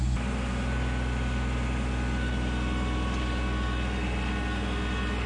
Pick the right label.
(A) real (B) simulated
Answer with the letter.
A